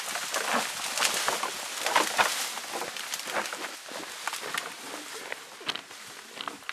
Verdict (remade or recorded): recorded